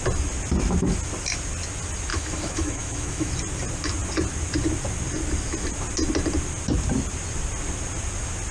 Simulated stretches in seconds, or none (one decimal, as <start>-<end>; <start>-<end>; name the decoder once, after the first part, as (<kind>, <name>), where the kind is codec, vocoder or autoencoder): 2.1-3.3 (autoencoder, DAC-VAE)